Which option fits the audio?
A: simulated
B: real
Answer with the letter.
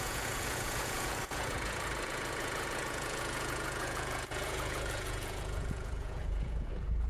A